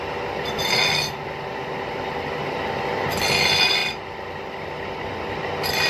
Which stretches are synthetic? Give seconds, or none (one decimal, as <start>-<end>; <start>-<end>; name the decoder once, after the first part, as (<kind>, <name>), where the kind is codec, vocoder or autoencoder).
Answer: none